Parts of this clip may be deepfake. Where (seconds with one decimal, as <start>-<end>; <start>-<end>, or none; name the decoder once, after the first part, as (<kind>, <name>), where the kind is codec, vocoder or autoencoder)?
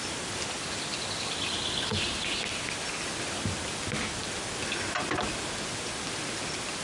none